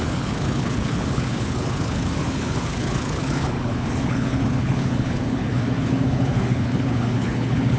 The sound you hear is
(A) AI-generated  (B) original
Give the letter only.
A